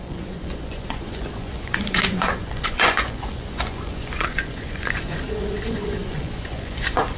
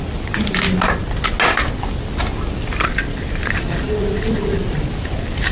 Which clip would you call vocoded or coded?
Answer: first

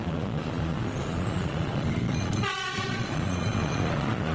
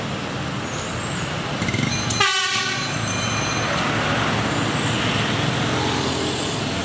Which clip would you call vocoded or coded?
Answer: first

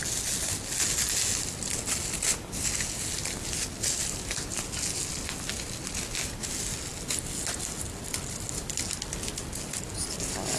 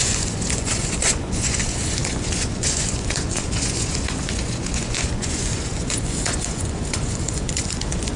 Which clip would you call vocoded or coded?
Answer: second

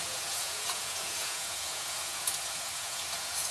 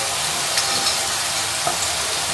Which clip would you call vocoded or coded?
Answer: first